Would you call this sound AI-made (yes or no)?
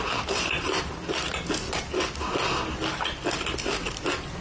no